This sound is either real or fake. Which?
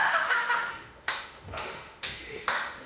fake